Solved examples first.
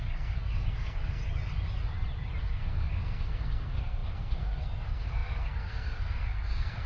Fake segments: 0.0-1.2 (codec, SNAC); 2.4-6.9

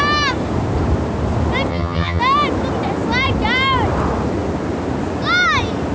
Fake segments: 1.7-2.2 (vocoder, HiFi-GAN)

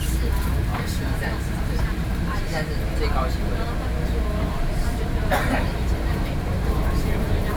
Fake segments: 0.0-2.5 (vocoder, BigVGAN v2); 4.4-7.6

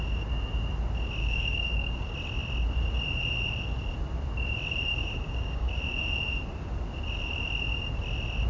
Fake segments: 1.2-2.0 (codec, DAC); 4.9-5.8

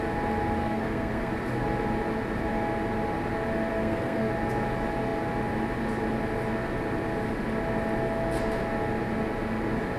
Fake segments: 0.6-1.3 (codec, SNAC); 3.7-4.3

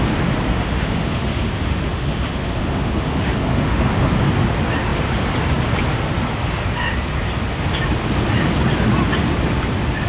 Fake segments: 0.5-4.2 (autoencoder, DAC-VAE)